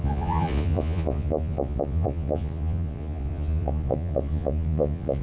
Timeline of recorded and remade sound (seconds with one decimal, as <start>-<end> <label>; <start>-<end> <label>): 0.0-5.2 remade